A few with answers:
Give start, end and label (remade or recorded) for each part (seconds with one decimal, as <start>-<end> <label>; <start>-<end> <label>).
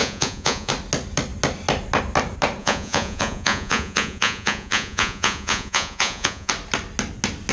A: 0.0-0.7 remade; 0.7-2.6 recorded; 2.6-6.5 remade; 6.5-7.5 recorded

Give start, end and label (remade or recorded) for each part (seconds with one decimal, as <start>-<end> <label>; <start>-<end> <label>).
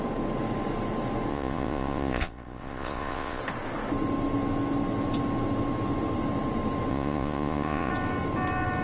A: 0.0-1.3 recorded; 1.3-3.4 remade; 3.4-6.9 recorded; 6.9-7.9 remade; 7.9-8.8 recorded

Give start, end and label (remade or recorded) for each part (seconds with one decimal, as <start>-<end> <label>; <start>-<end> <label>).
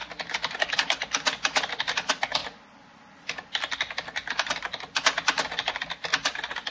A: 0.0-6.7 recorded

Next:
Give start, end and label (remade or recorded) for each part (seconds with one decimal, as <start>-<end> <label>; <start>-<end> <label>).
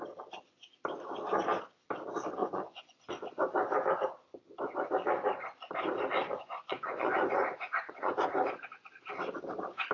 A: 0.0-2.4 recorded; 2.4-3.1 remade; 3.1-6.2 recorded; 6.2-8.1 remade; 8.1-9.9 recorded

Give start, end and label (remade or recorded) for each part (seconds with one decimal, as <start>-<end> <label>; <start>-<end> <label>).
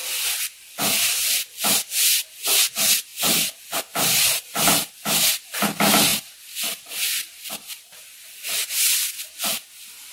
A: 0.0-10.1 recorded